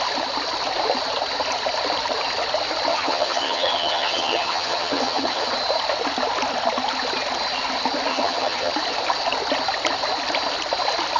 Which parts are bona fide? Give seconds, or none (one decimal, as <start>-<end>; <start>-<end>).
0.0-2.9; 5.5-8.1; 8.7-11.2